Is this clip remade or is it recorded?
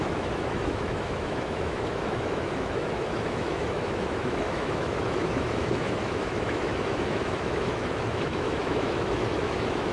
remade